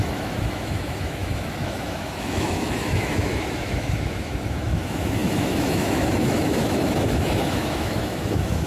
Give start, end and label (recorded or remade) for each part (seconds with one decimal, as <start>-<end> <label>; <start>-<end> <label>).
0.0-8.7 remade